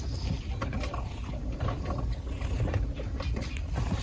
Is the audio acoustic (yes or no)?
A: no